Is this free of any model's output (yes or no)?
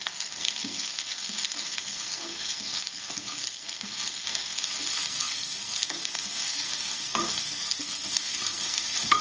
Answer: no